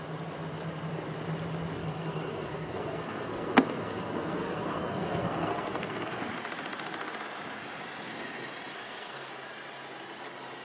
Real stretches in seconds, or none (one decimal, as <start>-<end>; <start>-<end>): 0.0-1.8; 6.2-8.7; 9.3-10.6